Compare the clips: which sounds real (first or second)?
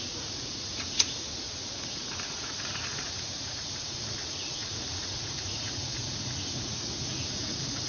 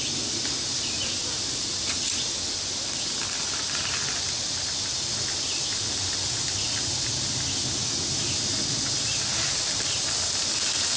second